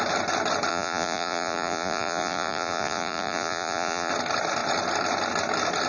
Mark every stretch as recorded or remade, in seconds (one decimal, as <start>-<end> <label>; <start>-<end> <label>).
0.0-0.7 recorded; 0.7-4.1 remade; 4.1-5.9 recorded